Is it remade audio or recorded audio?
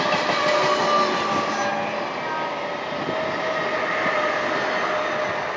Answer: recorded